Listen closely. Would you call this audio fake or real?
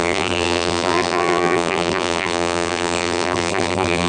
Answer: fake